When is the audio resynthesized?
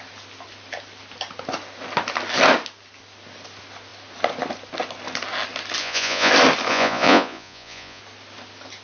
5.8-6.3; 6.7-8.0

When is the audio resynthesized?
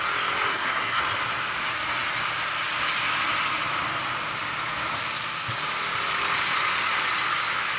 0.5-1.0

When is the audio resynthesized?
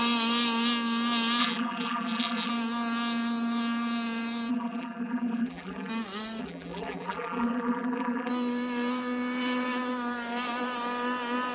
1.4-2.5; 4.5-5.9; 6.4-8.3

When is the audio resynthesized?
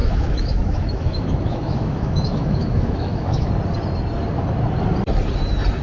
0.0-3.5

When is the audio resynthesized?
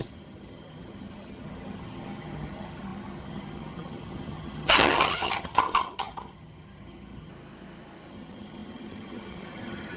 0.0-7.3; 8.1-10.0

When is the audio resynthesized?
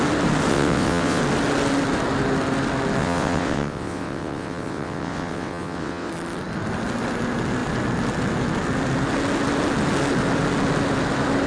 0.5-1.2; 3.0-6.1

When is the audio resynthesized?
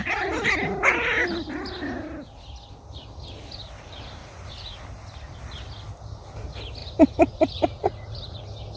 4.2-4.8; 6.8-8.4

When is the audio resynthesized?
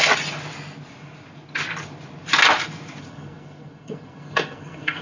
3.0-5.0